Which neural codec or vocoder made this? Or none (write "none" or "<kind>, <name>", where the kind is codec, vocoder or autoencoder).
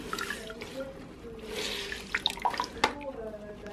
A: none